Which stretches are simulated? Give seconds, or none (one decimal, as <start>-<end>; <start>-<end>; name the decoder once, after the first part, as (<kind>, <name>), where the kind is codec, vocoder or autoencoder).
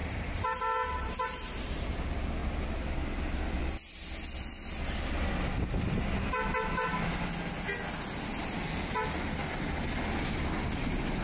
0.0-2.0 (vocoder, BigVGAN v2); 2.4-3.6